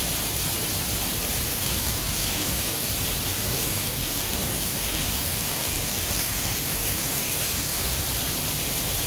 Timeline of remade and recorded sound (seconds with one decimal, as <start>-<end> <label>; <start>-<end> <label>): 0.0-1.5 recorded; 1.5-2.9 remade; 2.9-3.3 recorded; 3.3-8.0 remade; 8.0-9.1 recorded

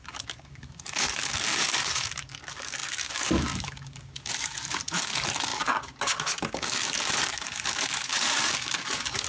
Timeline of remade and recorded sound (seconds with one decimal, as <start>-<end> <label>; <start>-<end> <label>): 0.0-9.3 remade

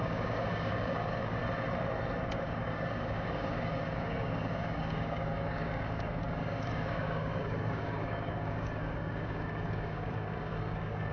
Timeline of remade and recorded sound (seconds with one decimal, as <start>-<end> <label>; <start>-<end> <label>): 0.0-1.4 remade; 1.4-2.2 recorded; 2.2-11.1 remade